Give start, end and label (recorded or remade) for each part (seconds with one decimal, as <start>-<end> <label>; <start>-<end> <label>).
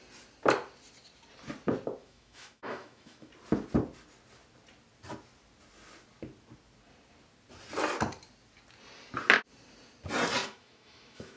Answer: 0.0-2.0 recorded; 2.0-3.3 remade; 3.3-10.4 recorded; 10.4-11.4 remade